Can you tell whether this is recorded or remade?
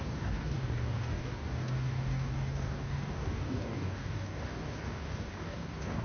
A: remade